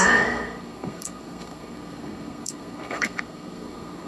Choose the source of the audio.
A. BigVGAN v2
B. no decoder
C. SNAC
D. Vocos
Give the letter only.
C